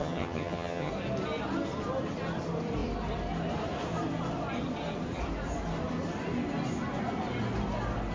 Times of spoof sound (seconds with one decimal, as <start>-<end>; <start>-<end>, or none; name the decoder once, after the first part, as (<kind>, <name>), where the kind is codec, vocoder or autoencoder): 0.0-0.9 (vocoder, HiFi-GAN)